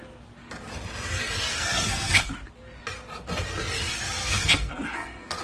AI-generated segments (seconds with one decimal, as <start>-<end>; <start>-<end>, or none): 1.5-2.3; 4.2-5.4